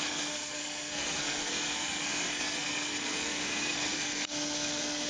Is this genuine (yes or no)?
no